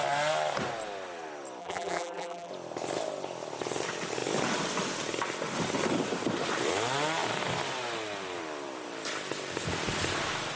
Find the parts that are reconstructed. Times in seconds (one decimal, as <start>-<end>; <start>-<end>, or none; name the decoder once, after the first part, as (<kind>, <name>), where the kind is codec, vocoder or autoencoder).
1.6-2.5 (vocoder, BigVGAN v2)